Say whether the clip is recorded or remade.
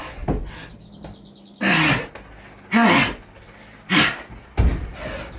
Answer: recorded